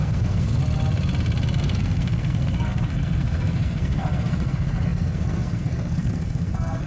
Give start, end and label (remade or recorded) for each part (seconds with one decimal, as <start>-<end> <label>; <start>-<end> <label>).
0.0-0.6 remade; 0.6-1.6 recorded; 1.6-6.9 remade

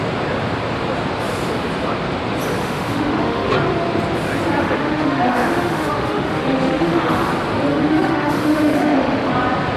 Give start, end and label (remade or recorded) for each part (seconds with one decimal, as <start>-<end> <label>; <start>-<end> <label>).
0.0-2.6 recorded; 2.6-3.5 remade; 3.5-4.6 recorded; 4.6-7.3 remade; 7.3-7.7 recorded; 7.7-9.3 remade; 9.3-9.8 recorded

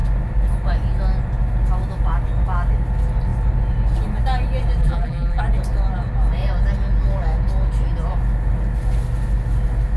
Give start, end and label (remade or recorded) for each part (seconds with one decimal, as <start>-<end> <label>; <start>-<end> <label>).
0.0-4.8 recorded; 4.8-5.4 remade; 5.4-10.0 recorded

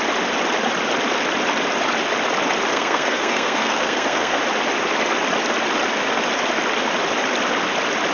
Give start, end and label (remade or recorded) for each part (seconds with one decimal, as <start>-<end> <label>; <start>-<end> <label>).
0.0-2.7 recorded; 2.7-4.4 remade; 4.4-8.1 recorded